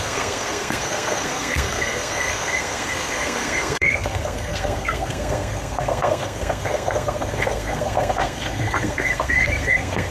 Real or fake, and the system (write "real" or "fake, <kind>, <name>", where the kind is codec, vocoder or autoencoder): fake, codec, SNAC